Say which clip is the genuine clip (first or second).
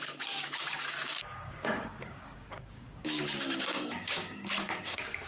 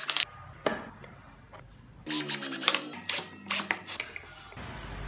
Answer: second